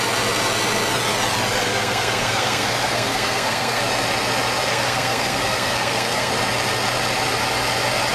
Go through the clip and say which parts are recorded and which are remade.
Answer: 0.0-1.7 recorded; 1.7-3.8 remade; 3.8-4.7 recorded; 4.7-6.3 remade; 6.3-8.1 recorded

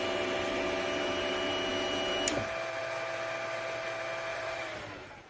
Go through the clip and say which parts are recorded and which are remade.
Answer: 0.0-4.3 recorded; 4.3-5.3 remade